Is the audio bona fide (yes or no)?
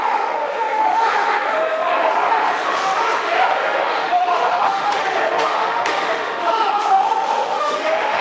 no